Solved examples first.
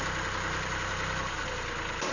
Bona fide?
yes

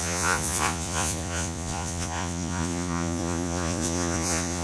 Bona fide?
no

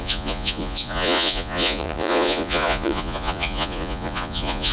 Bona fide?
no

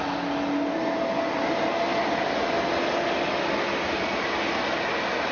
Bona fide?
yes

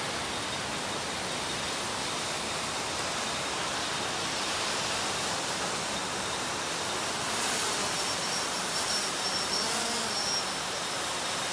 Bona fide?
yes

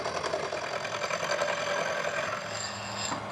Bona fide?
yes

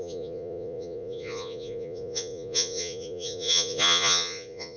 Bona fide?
no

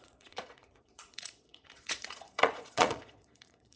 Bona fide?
no